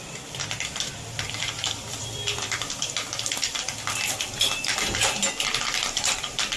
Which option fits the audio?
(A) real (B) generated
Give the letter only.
B